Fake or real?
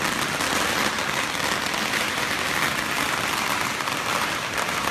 real